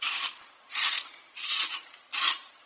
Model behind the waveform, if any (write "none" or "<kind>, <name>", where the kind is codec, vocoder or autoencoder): vocoder, Vocos